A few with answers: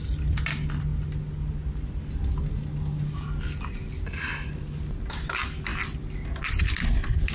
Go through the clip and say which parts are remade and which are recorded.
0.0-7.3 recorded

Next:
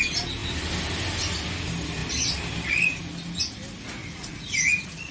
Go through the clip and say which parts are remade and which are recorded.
0.0-4.0 recorded; 4.0-5.1 remade

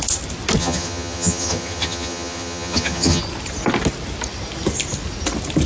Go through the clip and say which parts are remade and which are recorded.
0.0-0.6 recorded; 0.6-3.2 remade; 3.2-5.7 recorded